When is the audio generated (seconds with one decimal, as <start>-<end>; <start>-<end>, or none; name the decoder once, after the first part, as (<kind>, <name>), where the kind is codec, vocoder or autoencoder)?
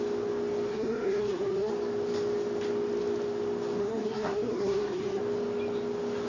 0.7-1.7 (codec, SNAC); 3.8-5.2